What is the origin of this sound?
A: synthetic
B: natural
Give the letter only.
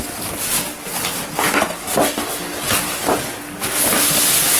B